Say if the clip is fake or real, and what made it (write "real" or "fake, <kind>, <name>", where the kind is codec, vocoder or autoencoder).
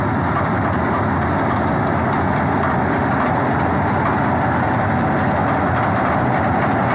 real